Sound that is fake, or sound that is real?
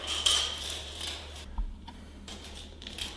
fake